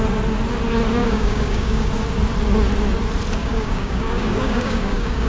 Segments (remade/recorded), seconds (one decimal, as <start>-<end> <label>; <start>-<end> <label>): 0.0-1.0 recorded; 1.0-1.9 remade; 1.9-3.4 recorded; 3.4-5.3 remade